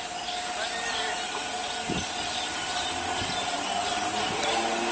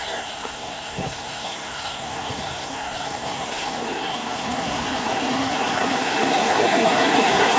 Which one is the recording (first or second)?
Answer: first